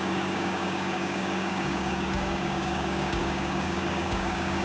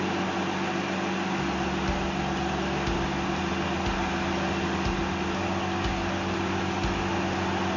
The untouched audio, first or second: second